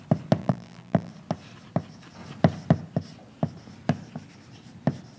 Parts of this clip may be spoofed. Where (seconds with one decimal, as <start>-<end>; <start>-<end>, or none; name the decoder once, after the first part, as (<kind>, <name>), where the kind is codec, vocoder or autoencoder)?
0.4-1.1 (vocoder, BigVGAN v2)